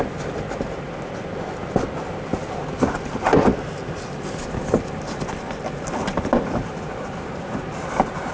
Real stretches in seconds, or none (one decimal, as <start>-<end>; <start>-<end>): 0.0-8.3